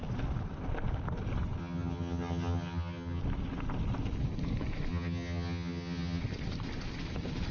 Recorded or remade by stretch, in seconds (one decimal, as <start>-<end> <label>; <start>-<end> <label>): 0.0-1.6 recorded; 1.6-3.2 remade; 3.2-4.9 recorded; 4.9-6.2 remade; 6.2-7.5 recorded